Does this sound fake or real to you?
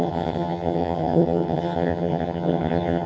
fake